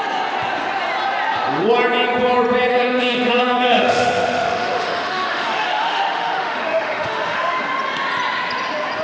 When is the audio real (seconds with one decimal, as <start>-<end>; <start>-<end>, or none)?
0.0-2.7; 7.6-9.0